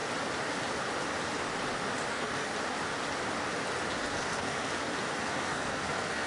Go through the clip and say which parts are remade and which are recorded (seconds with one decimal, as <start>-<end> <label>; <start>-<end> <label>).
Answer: 0.0-2.1 recorded; 2.1-2.5 remade; 2.5-4.0 recorded; 4.0-4.7 remade; 4.7-5.3 recorded; 5.3-6.3 remade